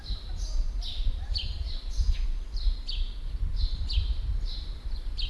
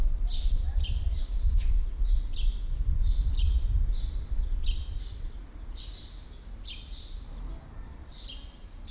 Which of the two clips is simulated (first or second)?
first